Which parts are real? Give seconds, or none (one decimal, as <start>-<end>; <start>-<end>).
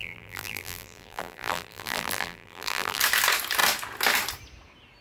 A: 3.0-5.0